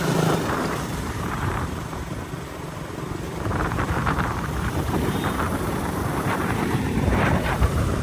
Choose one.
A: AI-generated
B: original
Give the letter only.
A